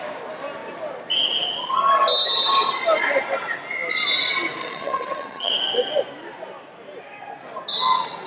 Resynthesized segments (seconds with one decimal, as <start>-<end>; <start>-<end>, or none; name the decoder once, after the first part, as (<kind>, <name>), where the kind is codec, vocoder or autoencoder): 4.6-5.5 (vocoder, HiFi-GAN)